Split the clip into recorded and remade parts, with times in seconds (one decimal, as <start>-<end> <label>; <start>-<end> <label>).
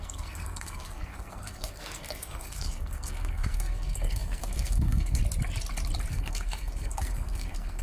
0.0-5.2 remade; 5.2-6.1 recorded; 6.1-7.8 remade